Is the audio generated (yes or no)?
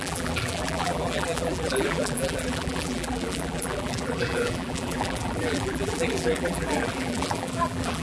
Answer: yes